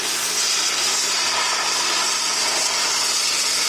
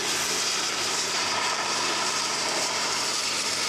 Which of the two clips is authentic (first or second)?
first